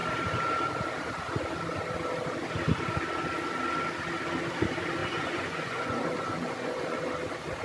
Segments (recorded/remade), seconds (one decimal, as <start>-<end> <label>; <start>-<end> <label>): 0.0-5.0 recorded; 5.0-7.0 remade; 7.0-7.6 recorded